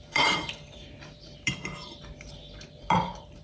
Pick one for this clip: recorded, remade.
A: remade